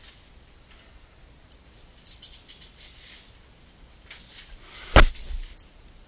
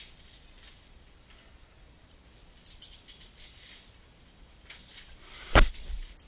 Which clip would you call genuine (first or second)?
first